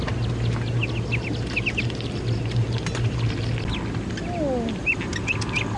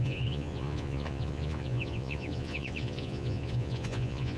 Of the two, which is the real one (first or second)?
first